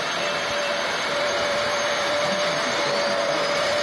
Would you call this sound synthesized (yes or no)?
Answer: yes